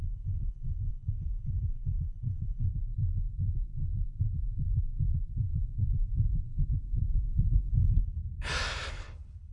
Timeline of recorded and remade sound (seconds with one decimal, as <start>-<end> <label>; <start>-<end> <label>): 0.0-2.7 remade; 2.7-7.7 recorded; 7.7-8.2 remade; 8.2-8.9 recorded; 8.9-9.5 remade